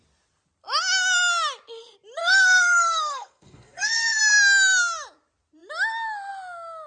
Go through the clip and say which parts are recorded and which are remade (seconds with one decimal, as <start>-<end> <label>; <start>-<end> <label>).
0.0-2.2 recorded; 2.2-4.2 remade; 4.2-6.9 recorded